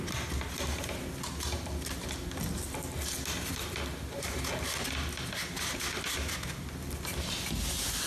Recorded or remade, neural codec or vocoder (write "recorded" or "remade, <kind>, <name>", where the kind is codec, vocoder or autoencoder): recorded